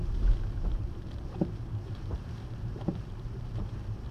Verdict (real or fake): fake